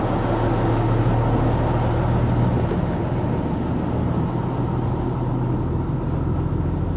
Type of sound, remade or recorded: recorded